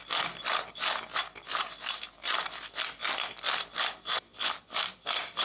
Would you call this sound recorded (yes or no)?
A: yes